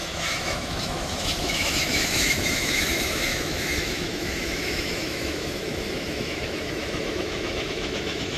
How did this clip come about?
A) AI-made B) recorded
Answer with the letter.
A